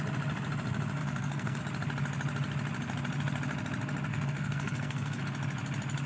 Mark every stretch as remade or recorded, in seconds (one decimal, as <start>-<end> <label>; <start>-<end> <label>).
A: 0.0-1.0 recorded; 1.0-1.6 remade; 1.6-4.1 recorded; 4.1-5.2 remade; 5.2-6.1 recorded